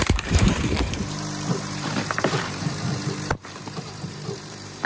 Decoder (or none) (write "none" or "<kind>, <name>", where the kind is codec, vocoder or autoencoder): vocoder, BigVGAN v2